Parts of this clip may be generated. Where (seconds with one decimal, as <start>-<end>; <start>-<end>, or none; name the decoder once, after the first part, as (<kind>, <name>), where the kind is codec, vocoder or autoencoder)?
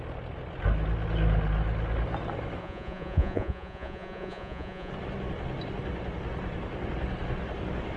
2.6-4.9 (vocoder, Vocos)